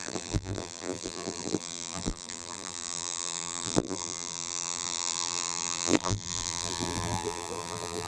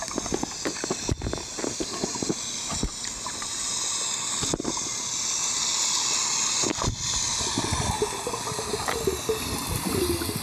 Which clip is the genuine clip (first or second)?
second